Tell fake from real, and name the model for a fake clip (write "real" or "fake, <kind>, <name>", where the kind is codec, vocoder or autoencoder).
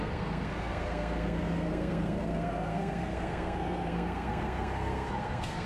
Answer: fake, codec, SNAC